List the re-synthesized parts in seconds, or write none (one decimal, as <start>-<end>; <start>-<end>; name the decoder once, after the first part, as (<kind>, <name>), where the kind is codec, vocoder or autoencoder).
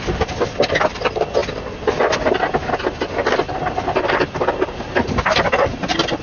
none